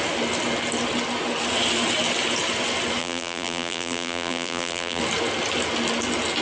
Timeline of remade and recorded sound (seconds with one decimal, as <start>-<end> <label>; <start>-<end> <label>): 0.0-3.0 recorded; 3.0-5.0 remade; 5.0-6.4 recorded